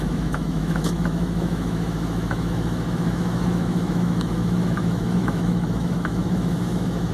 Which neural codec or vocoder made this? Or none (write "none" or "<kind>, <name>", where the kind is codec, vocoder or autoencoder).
autoencoder, DAC-VAE